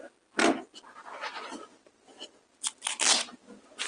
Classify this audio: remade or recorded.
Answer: recorded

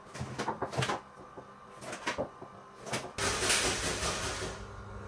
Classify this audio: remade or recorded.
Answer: recorded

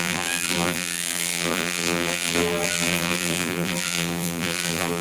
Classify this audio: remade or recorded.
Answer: remade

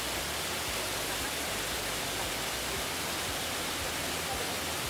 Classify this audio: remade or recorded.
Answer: recorded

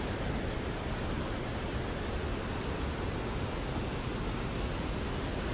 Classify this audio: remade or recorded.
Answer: recorded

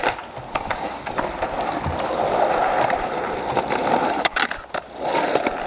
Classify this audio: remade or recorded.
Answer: remade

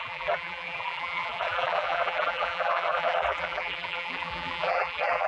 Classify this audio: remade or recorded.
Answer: remade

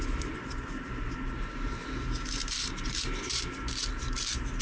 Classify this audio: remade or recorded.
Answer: remade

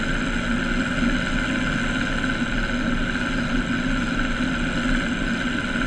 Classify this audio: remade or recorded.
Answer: recorded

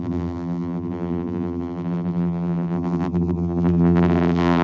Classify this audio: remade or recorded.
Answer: remade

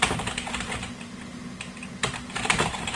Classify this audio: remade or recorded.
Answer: remade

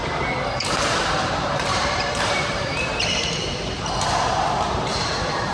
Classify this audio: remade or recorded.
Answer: remade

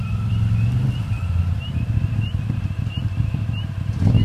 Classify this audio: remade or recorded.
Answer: remade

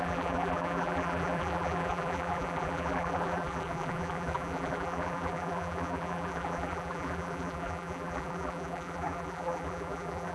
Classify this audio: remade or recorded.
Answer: remade